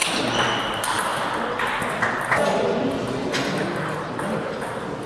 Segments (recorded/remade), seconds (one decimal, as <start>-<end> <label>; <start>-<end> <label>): 0.0-5.1 recorded